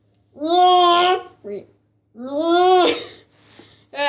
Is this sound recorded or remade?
recorded